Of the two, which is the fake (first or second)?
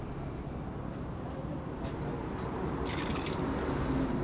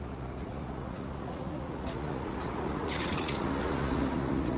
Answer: second